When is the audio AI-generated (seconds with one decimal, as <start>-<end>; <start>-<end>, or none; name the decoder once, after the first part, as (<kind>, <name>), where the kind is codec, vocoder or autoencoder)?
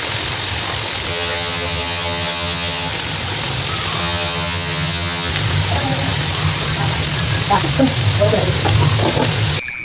1.1-2.9 (vocoder, HiFi-GAN); 4.0-5.3